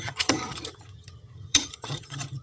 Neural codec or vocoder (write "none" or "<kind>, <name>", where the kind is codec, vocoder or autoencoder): vocoder, HiFi-GAN